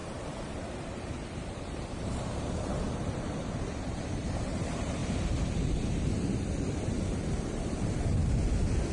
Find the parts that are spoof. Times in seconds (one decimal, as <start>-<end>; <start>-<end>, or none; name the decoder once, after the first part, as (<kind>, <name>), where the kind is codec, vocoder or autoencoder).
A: 0.0-5.0 (vocoder, BigVGAN v2); 5.9-8.2